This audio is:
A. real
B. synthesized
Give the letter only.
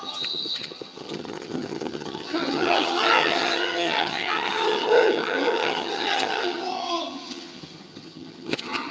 B